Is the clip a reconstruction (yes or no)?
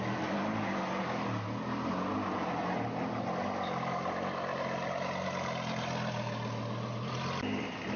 no